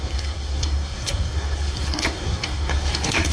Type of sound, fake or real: fake